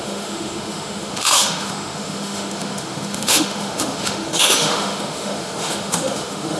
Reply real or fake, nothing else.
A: fake